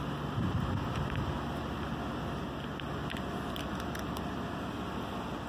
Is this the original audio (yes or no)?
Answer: yes